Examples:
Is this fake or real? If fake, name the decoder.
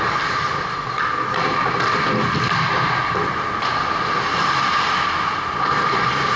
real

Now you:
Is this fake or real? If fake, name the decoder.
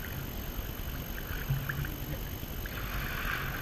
real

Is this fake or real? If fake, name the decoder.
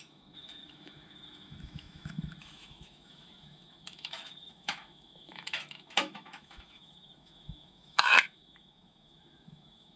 fake, autoencoder, DAC-VAE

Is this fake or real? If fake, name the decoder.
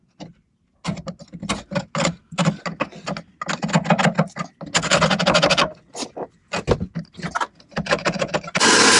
real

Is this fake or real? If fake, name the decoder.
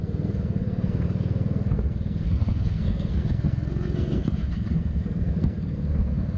fake, codec, SNAC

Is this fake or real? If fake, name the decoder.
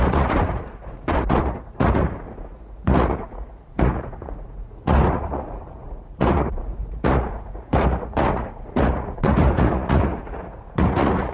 fake, vocoder, Vocos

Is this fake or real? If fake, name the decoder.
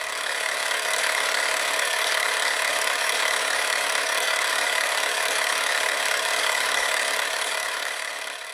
fake, codec, DAC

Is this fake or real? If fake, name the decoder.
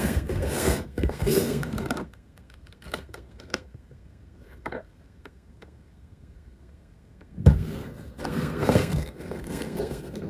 fake, codec, SNAC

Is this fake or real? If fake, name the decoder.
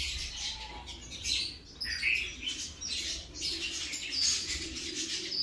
real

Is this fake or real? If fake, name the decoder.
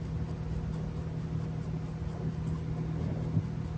real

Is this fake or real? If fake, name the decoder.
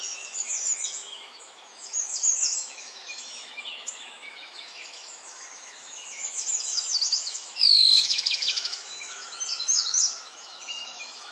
fake, autoencoder, DAC-VAE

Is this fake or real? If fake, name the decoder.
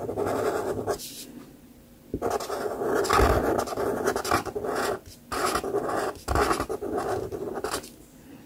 real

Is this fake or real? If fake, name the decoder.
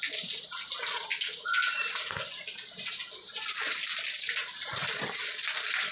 real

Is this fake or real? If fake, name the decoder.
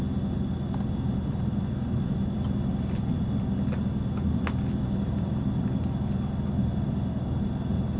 real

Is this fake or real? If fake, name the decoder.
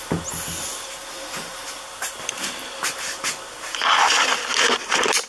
real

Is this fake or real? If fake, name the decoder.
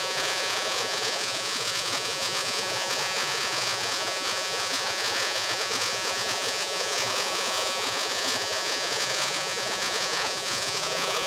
fake, vocoder, Vocos